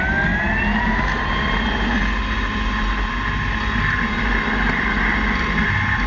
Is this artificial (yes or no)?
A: no